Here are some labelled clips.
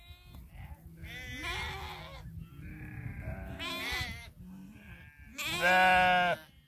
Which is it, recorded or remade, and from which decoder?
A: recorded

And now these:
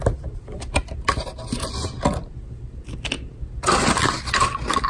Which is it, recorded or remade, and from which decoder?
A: recorded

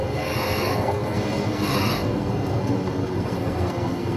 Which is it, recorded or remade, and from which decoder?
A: remade, codec, SNAC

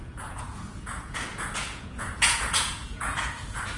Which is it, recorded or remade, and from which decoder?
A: remade, vocoder, Vocos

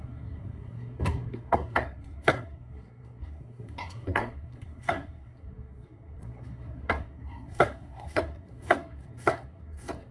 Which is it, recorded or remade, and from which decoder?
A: remade, codec, SNAC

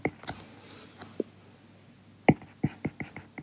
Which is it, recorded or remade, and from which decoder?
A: recorded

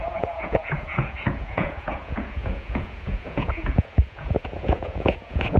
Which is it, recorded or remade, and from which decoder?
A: remade, vocoder, Vocos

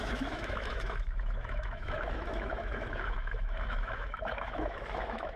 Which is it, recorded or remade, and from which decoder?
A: remade, autoencoder, DAC-VAE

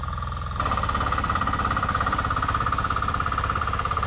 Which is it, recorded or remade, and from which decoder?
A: remade, vocoder, BigVGAN v2